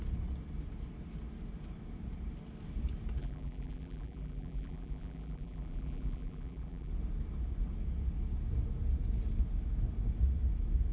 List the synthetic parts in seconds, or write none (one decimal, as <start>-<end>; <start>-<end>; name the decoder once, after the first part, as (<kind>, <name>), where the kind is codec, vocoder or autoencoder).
3.2-6.9 (vocoder, BigVGAN v2)